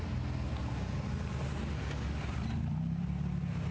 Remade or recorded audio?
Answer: recorded